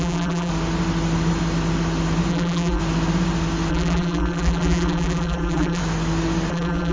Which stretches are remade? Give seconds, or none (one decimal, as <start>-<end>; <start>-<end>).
0.0-0.5; 2.3-2.8; 3.7-5.8; 6.5-6.9